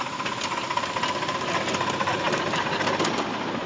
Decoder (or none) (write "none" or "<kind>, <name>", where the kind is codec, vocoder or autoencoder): none